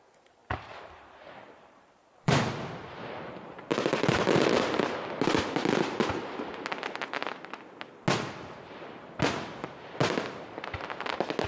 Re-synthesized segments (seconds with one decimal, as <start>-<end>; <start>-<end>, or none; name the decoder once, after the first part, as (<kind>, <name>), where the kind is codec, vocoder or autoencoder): 0.4-2.4 (vocoder, BigVGAN v2); 3.7-5.0